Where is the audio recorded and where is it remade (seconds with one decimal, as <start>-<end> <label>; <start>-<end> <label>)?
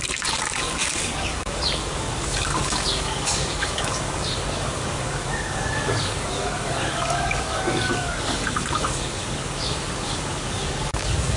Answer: 0.0-11.4 remade